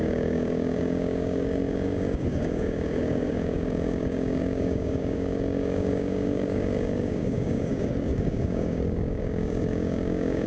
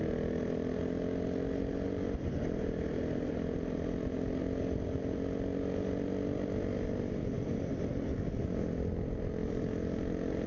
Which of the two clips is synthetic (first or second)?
first